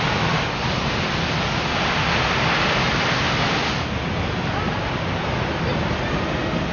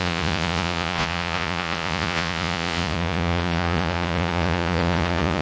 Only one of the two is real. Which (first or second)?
first